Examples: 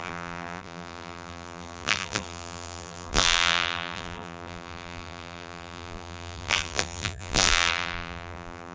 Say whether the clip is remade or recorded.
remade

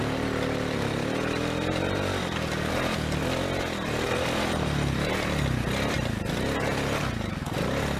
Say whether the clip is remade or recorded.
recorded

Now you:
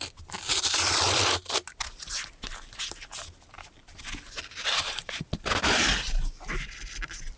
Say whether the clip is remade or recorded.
recorded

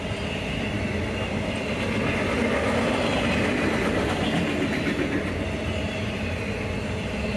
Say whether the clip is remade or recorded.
recorded